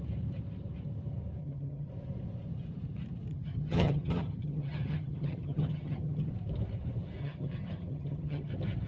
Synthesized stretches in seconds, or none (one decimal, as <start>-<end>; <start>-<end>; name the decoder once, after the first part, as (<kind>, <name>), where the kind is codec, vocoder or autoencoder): 1.4-1.9 (vocoder, HiFi-GAN); 3.3-6.3; 7.2-8.5